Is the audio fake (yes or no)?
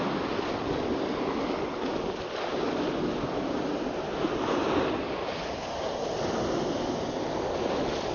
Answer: no